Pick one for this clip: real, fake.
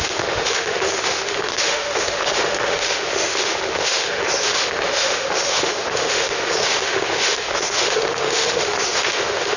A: fake